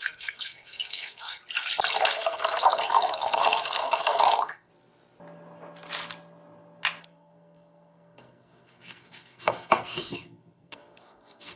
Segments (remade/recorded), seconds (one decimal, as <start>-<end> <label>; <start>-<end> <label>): 0.0-1.4 remade; 1.4-2.0 recorded; 2.0-4.7 remade; 4.7-7.0 recorded; 7.0-11.6 remade